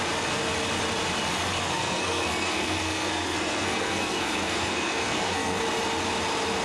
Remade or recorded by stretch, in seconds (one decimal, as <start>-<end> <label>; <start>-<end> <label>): 0.0-1.6 recorded; 1.6-5.6 remade; 5.6-6.6 recorded